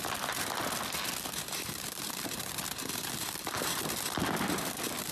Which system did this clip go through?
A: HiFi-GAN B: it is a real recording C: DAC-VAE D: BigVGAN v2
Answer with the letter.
B